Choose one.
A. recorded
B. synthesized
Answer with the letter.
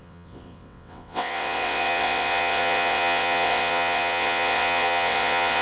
B